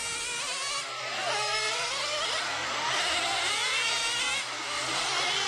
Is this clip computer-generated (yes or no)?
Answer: no